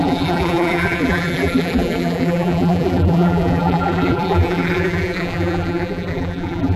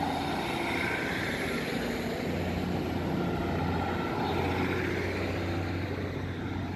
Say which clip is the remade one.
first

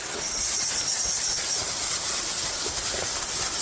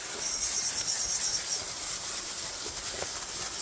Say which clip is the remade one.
first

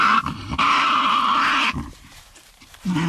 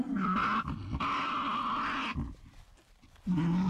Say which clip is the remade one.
first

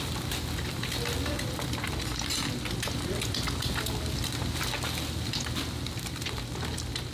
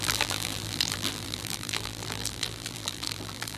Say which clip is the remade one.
second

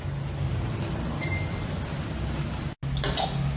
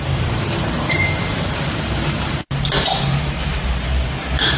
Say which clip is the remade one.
second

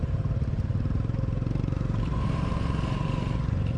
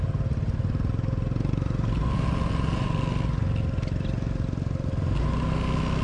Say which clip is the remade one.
first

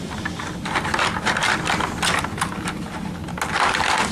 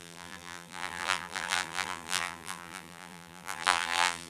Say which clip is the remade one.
second